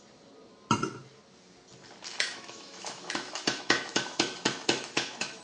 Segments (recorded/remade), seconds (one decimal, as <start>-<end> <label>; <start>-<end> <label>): 0.0-2.1 recorded; 2.1-5.4 remade